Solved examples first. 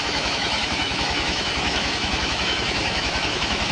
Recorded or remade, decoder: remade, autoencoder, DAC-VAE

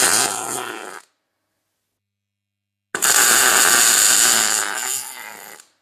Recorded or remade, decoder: recorded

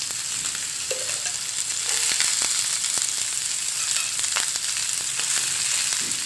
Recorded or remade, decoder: recorded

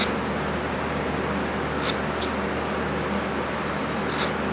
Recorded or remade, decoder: recorded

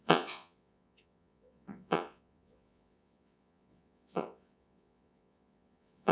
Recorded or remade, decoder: remade, vocoder, Vocos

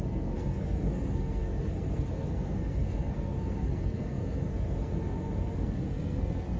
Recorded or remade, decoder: remade, codec, SNAC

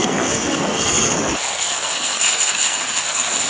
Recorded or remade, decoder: remade, codec, SNAC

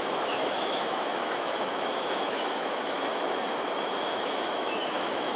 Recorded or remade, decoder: remade, autoencoder, DAC-VAE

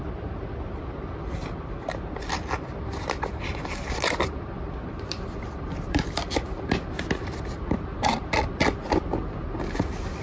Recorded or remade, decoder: remade, vocoder, BigVGAN v2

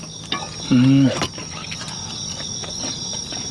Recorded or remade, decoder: recorded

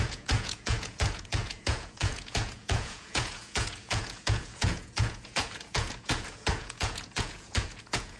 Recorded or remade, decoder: remade, vocoder, Vocos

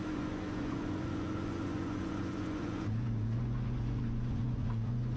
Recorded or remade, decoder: remade, vocoder, Vocos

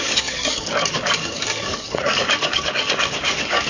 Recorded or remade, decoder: remade, codec, DAC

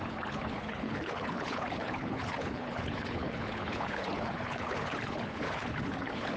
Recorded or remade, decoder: remade, codec, HILCodec